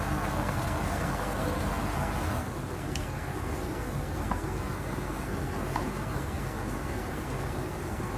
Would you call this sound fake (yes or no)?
yes